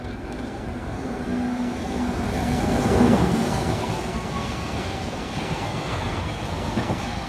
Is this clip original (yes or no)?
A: no